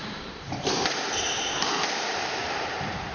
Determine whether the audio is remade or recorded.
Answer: remade